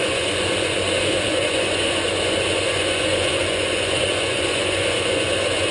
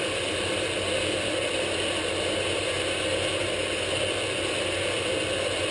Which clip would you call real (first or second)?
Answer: second